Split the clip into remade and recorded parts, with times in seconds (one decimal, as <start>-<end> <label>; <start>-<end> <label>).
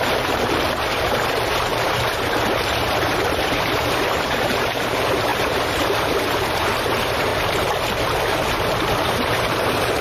0.0-7.3 remade; 7.3-9.0 recorded; 9.0-10.0 remade